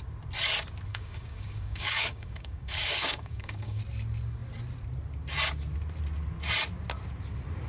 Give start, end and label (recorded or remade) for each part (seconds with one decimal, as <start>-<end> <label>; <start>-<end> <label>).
0.0-0.9 recorded; 0.9-3.8 remade; 3.8-7.7 recorded